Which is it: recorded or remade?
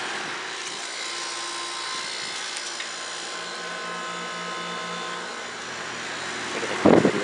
recorded